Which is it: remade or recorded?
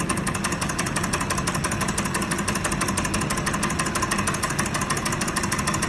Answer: recorded